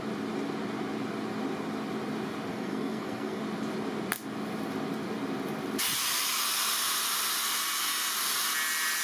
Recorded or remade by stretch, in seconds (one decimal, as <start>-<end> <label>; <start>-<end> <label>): 0.0-2.5 recorded; 2.5-3.4 remade; 3.4-9.0 recorded